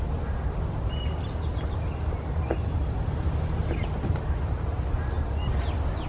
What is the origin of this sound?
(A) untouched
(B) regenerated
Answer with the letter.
A